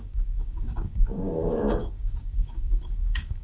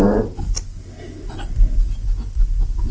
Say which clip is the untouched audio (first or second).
second